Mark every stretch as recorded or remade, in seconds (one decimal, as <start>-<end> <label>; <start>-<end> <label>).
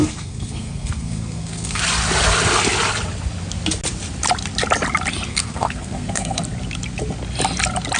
0.0-1.8 remade; 1.8-5.3 recorded; 5.3-6.4 remade; 6.4-8.0 recorded